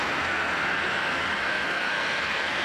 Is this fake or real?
fake